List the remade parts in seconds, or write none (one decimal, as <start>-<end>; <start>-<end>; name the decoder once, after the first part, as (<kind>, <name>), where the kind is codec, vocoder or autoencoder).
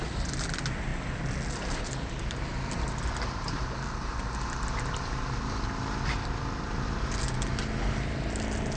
none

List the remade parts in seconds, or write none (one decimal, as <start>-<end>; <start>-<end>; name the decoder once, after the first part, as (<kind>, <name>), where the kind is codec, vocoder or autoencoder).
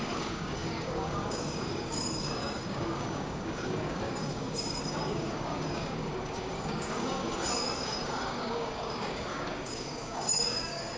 0.0-11.0 (codec, DAC)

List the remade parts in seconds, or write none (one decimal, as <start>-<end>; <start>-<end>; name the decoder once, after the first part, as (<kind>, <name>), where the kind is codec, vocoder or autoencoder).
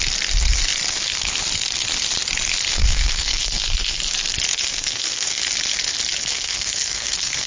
2.7-4.0 (codec, SNAC); 4.5-5.4; 6.3-7.5